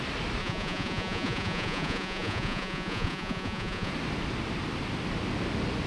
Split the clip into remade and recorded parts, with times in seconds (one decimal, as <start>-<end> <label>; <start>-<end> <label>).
0.0-0.4 recorded; 0.4-3.9 remade; 3.9-5.9 recorded